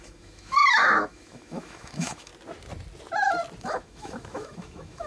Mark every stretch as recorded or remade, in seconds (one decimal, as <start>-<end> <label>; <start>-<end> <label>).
0.0-2.3 remade; 2.3-3.6 recorded; 3.6-5.1 remade